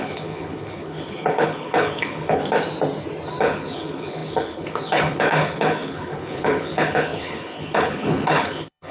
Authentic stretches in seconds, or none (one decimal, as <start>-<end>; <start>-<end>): 2.4-3.4